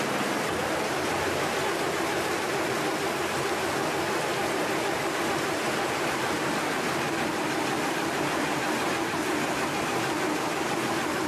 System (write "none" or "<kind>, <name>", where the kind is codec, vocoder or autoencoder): none